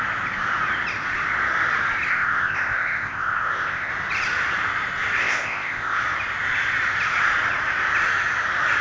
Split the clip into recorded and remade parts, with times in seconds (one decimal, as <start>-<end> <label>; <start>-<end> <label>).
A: 0.0-2.1 recorded; 2.1-3.9 remade; 3.9-5.2 recorded; 5.2-6.0 remade; 6.0-8.8 recorded